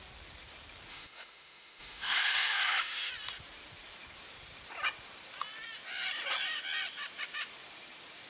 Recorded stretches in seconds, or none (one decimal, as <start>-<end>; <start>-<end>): 0.0-0.9; 3.1-8.3